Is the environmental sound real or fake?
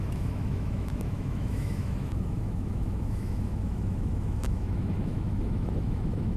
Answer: fake